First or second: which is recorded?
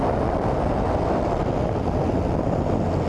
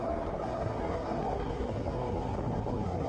first